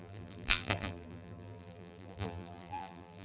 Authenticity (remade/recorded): remade